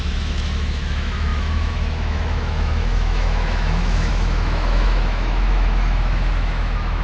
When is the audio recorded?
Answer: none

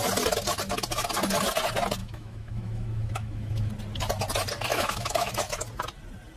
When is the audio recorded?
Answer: 0.0-2.0; 3.7-4.7; 5.3-6.4